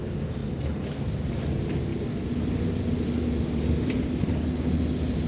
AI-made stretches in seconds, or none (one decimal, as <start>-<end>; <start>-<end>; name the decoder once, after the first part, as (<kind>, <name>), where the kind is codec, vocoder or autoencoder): none